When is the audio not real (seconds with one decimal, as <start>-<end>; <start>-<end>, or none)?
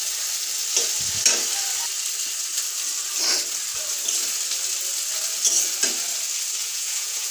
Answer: 6.6-7.3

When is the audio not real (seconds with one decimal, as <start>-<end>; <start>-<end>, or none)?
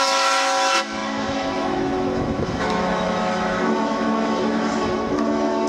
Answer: 0.0-5.7